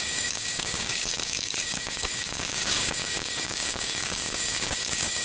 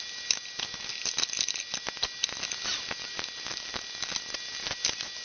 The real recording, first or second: second